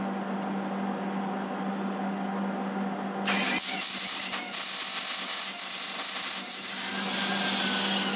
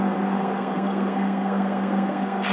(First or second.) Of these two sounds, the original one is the first